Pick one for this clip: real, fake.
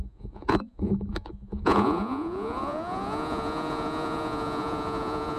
fake